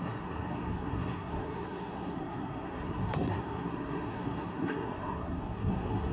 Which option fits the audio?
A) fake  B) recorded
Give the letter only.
A